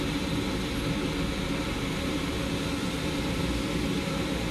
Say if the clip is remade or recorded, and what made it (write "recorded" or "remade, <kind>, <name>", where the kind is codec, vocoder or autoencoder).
recorded